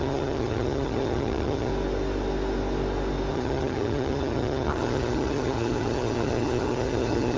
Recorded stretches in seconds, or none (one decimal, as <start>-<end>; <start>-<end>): 1.7-3.3